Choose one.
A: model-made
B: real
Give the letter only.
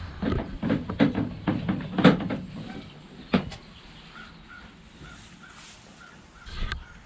B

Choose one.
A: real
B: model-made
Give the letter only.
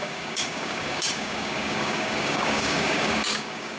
B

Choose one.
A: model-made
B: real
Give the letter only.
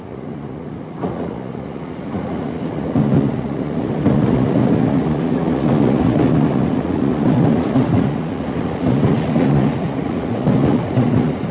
A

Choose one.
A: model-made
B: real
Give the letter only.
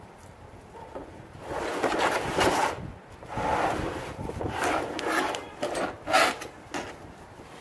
B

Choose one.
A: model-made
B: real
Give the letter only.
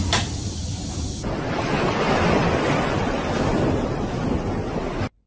B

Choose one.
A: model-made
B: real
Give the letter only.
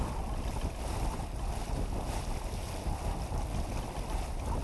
B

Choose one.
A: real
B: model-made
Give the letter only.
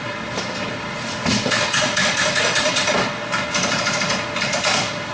A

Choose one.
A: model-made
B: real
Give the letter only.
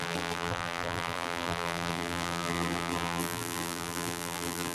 A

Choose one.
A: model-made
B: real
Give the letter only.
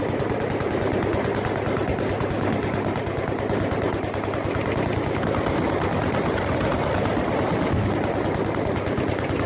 B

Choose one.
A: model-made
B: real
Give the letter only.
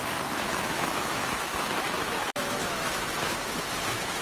A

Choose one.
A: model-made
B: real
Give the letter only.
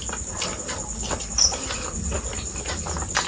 B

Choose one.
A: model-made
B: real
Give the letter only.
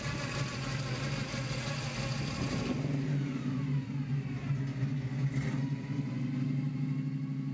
B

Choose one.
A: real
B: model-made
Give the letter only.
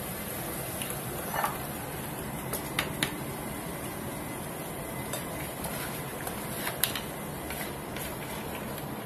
A